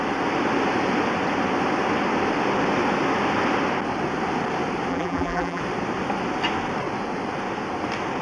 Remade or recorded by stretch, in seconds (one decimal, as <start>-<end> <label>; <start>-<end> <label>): 0.0-4.9 recorded; 4.9-5.6 remade; 5.6-8.2 recorded